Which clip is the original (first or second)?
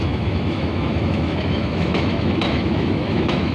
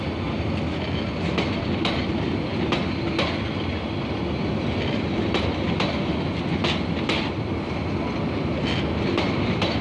second